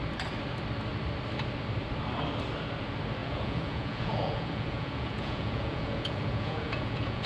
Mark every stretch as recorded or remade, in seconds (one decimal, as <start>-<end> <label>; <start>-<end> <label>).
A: 0.0-3.2 recorded; 3.2-7.3 remade

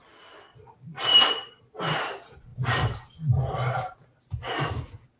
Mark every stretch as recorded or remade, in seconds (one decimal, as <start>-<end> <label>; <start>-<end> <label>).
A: 0.0-1.1 recorded; 1.1-1.6 remade; 1.6-2.5 recorded; 2.5-4.2 remade; 4.2-5.2 recorded

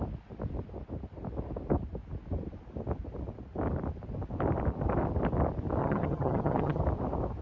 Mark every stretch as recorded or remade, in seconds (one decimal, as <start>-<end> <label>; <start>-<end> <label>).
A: 0.0-5.8 recorded; 5.8-6.8 remade; 6.8-7.4 recorded

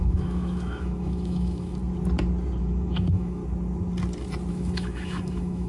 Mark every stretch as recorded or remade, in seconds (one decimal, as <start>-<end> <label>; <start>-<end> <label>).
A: 0.0-1.8 remade; 1.8-2.6 recorded; 2.6-3.4 remade; 3.4-4.5 recorded; 4.5-5.7 remade

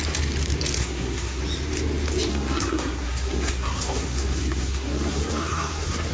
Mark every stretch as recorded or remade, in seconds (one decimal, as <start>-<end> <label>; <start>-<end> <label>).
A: 0.0-0.8 recorded; 0.8-1.4 remade; 1.4-2.3 recorded; 2.3-6.1 remade

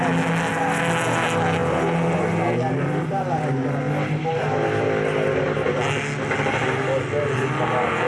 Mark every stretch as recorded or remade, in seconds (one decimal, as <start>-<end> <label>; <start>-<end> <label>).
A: 0.0-8.1 recorded

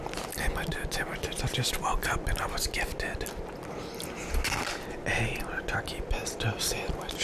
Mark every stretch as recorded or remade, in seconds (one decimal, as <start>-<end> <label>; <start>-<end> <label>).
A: 0.0-7.2 recorded

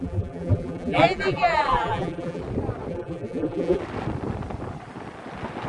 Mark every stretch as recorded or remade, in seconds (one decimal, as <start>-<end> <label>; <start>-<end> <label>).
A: 0.0-2.4 remade; 2.4-2.9 recorded; 2.9-3.8 remade; 3.8-5.7 recorded